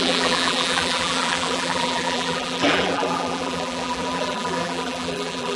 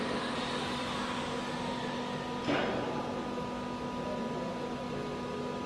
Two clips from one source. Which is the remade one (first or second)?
first